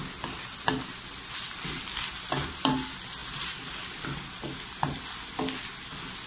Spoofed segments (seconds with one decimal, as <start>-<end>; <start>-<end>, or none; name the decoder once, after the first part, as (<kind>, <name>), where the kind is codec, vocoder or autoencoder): none